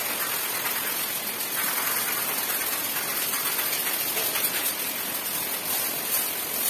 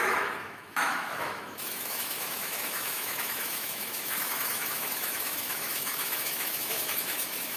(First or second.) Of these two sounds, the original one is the first